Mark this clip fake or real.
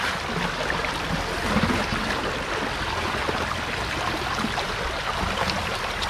real